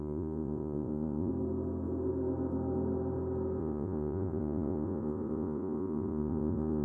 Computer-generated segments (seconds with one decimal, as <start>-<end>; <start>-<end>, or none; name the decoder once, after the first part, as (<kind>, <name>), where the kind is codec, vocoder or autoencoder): 0.0-1.3 (vocoder, Vocos); 3.6-6.8